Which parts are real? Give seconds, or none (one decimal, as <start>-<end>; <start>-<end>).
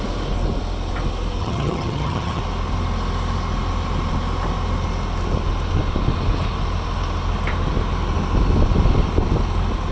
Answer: 0.0-1.4; 2.4-9.9